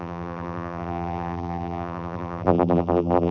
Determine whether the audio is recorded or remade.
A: remade